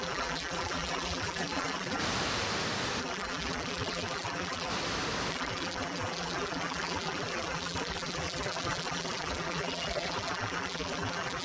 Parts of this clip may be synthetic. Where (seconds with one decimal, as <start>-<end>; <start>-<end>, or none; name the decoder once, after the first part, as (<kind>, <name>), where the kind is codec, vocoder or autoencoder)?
0.0-2.0 (vocoder, BigVGAN v2); 3.0-4.7; 5.3-11.4